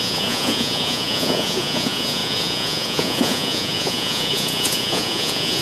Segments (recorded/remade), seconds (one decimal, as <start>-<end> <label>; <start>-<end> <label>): 0.0-5.6 remade